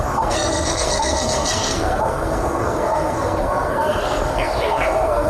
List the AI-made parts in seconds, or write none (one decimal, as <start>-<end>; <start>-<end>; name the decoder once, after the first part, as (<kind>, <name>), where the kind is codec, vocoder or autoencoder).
0.0-5.3 (codec, SNAC)